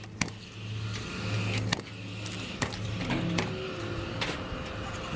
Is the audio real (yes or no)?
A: yes